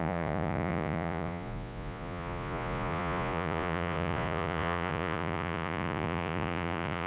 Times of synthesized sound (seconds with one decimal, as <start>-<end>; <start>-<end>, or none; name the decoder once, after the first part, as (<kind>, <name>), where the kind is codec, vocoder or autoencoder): 0.0-7.1 (vocoder, Vocos)